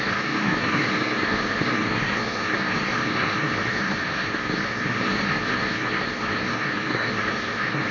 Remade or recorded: remade